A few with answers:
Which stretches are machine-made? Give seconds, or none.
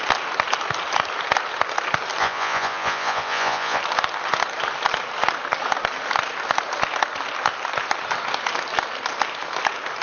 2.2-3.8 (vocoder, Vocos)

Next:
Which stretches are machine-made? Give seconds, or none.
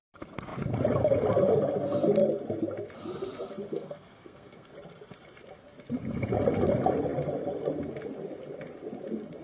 3.7-4.7 (codec, SNAC)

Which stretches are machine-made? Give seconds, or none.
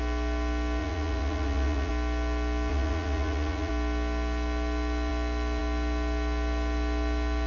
0.8-1.9 (vocoder, Vocos); 2.7-3.7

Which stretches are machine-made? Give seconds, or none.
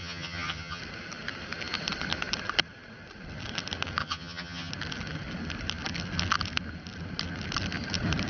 0.0-0.8 (vocoder, HiFi-GAN); 4.0-4.7